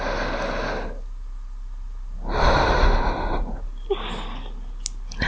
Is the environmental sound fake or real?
real